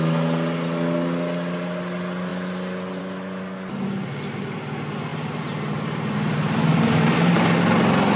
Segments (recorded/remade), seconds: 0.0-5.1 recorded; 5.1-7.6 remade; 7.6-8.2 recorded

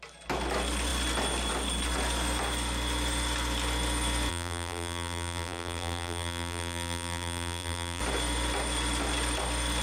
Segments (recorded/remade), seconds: 0.0-4.3 recorded; 4.3-8.0 remade; 8.0-9.8 recorded